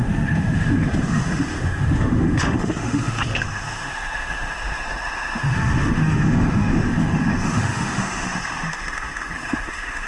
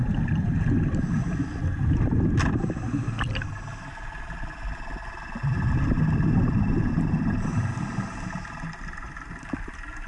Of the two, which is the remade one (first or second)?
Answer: first